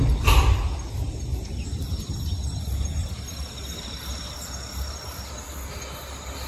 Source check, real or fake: real